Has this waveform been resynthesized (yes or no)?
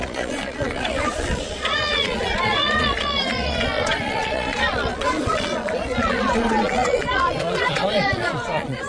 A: yes